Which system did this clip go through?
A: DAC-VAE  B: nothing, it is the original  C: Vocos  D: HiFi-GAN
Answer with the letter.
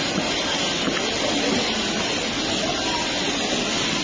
B